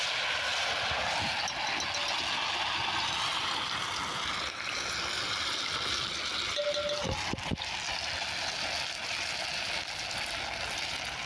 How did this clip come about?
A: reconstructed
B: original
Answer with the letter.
B